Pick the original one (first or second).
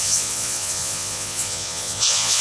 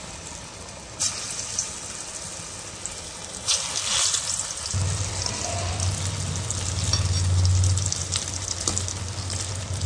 second